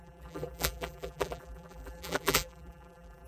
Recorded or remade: remade